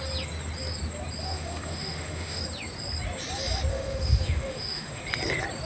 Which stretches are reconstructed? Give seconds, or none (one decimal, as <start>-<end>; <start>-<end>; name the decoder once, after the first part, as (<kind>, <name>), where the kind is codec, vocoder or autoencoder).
1.2-2.4 (autoencoder, DAC-VAE); 3.7-5.0